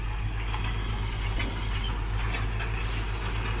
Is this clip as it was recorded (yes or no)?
yes